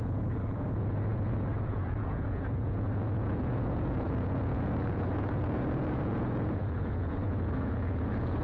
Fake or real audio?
fake